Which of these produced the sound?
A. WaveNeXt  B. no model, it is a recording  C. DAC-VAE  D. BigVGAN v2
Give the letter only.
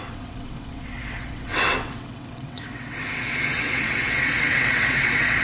A